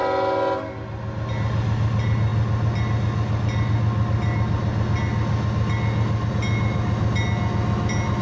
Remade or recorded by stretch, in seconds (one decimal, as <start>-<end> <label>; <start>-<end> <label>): 0.0-8.2 recorded